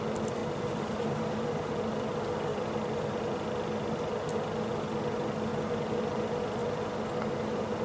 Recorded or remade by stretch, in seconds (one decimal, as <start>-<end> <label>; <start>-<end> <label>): 0.0-0.4 recorded; 0.4-1.7 remade; 1.7-2.5 recorded; 2.5-3.2 remade; 3.2-7.8 recorded